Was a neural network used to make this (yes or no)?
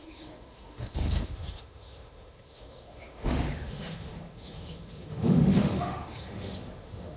yes